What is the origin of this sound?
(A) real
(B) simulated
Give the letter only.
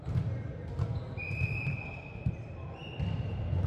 A